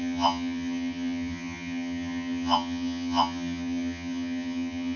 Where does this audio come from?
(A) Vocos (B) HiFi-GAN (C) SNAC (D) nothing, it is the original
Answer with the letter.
B